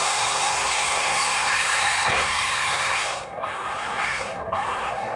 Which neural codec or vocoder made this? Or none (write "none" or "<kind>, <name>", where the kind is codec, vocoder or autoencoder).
codec, SNAC